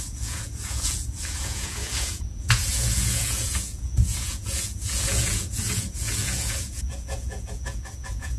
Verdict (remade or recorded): remade